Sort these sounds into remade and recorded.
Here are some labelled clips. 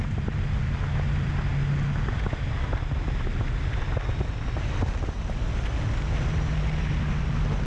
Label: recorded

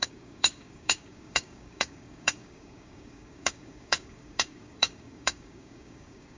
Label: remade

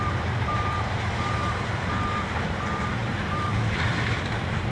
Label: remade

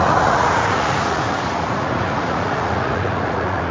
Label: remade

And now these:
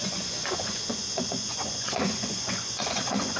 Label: remade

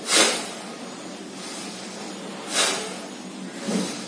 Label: recorded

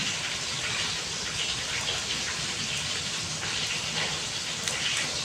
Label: recorded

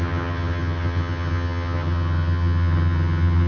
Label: remade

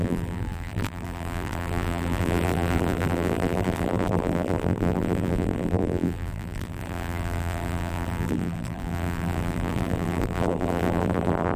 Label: remade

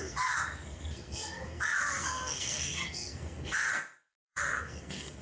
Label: remade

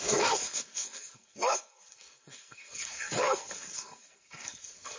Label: remade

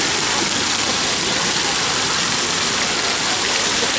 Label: recorded